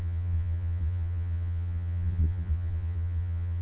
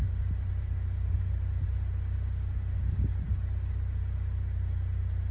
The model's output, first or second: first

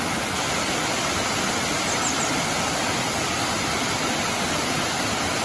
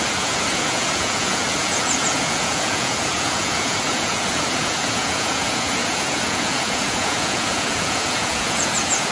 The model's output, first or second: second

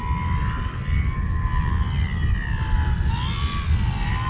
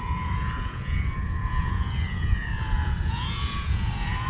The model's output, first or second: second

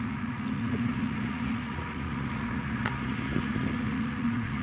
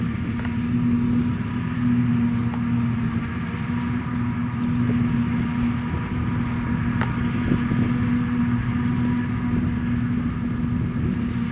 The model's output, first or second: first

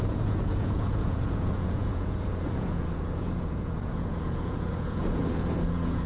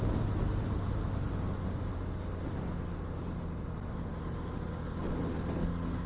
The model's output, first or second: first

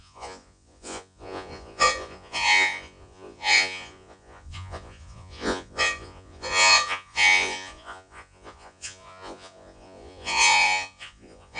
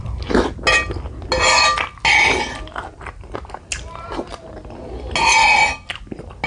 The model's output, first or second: first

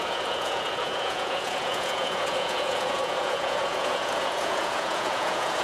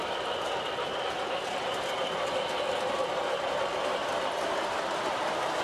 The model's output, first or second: first